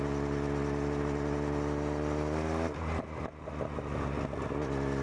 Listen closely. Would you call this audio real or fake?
real